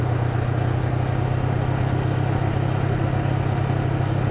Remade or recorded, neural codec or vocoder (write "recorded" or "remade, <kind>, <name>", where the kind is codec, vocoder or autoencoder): recorded